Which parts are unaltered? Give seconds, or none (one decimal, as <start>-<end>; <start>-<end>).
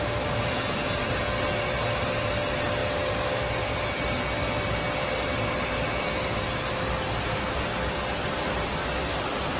0.0-9.6